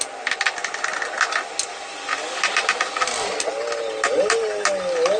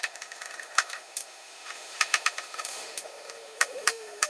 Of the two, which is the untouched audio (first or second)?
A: first